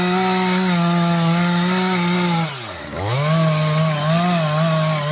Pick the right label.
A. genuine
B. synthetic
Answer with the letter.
A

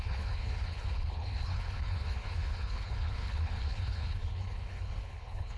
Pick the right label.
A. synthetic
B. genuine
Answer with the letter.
A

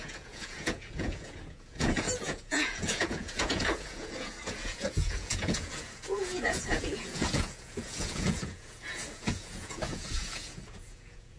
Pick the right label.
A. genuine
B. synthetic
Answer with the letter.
B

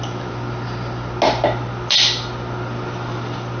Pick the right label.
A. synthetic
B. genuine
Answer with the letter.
B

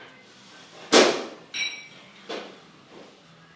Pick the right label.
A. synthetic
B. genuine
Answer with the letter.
B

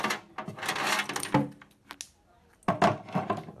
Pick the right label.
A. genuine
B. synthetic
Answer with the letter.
A